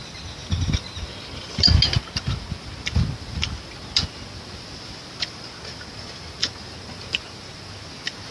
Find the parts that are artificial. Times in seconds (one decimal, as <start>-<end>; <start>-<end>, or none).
6.4-7.7